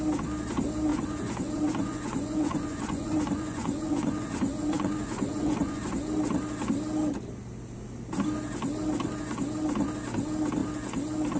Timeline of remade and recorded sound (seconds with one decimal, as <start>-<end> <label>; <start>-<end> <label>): 0.0-0.9 recorded; 0.9-5.8 remade; 5.8-11.4 recorded